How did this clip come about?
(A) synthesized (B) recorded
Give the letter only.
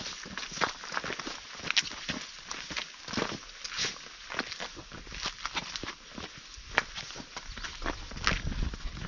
B